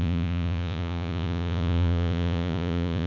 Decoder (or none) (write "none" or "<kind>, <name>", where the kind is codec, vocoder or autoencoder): vocoder, Vocos